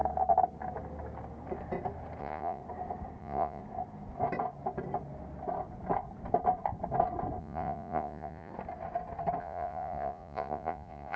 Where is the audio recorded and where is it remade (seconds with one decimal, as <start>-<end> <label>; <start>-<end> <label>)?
0.0-2.2 recorded; 2.2-2.6 remade; 2.6-3.2 recorded; 3.2-3.6 remade; 3.6-7.4 recorded; 7.4-8.5 remade; 8.5-9.4 recorded; 9.4-11.2 remade